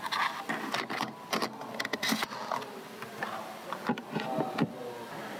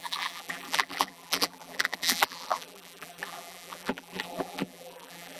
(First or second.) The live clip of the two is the first